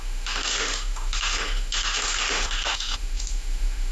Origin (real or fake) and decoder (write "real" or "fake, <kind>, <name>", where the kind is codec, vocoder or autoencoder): fake, autoencoder, DAC-VAE